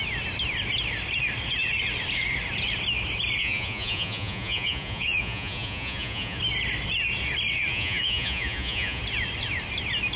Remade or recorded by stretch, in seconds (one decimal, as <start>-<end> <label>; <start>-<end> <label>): 0.0-3.4 recorded; 3.4-6.4 remade; 6.4-7.7 recorded; 7.7-9.0 remade; 9.0-10.2 recorded